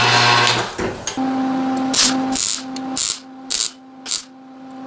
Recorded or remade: recorded